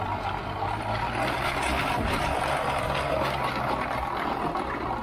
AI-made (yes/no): no